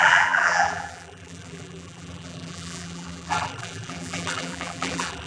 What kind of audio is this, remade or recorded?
remade